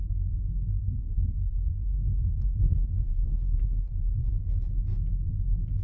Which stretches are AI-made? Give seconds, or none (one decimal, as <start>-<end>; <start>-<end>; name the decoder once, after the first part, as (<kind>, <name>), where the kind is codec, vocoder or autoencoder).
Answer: 0.8-4.3 (codec, SNAC)